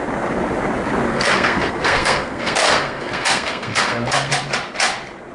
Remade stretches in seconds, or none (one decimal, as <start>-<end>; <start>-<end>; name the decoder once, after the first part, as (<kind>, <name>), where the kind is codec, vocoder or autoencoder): 1.1-4.3 (codec, SNAC)